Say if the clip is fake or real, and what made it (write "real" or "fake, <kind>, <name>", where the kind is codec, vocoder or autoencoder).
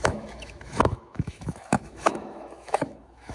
fake, autoencoder, DAC-VAE